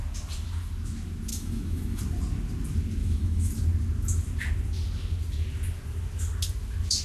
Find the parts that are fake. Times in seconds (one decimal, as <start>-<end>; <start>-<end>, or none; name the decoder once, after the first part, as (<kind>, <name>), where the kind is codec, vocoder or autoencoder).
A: 1.3-2.0 (autoencoder, DAC-VAE); 3.0-3.5